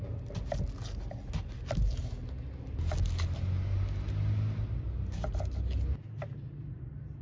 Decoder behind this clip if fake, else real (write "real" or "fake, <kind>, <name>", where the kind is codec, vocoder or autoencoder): real